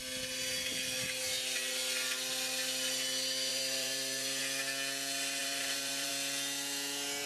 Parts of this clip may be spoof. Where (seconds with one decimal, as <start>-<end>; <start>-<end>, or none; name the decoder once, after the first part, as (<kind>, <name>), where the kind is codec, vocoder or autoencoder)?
3.5-4.4 (vocoder, BigVGAN v2); 5.4-6.1